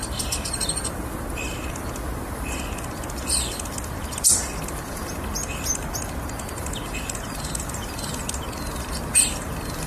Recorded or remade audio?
recorded